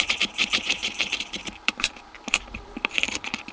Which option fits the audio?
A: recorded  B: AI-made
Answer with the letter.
B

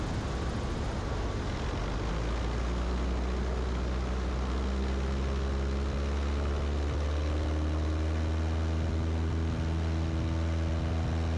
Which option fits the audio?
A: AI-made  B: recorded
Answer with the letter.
B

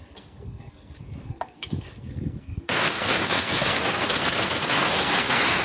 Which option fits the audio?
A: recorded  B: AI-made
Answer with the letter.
B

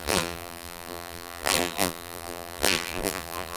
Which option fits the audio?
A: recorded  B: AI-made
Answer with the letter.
B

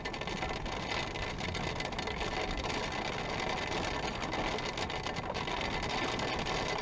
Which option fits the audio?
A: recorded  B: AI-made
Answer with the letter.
A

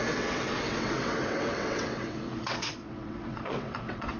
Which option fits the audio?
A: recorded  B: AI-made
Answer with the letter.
B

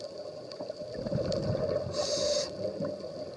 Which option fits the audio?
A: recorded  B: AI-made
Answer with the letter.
A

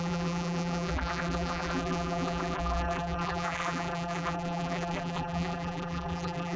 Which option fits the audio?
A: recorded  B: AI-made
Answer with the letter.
B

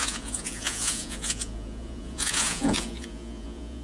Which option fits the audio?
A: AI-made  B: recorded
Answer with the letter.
A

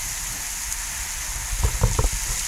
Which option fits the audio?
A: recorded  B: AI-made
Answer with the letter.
A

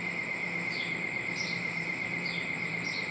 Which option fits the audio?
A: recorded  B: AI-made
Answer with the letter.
B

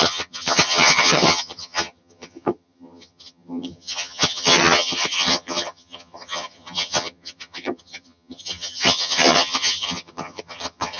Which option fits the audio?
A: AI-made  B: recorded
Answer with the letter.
A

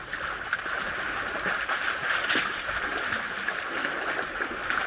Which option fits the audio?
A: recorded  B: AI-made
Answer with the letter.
A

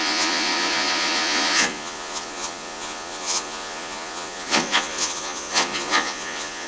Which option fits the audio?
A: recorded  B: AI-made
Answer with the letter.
B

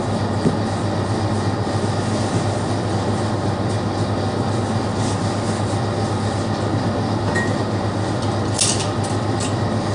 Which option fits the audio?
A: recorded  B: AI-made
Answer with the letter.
A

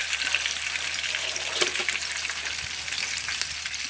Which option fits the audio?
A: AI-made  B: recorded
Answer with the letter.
B